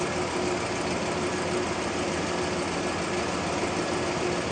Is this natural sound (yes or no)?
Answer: yes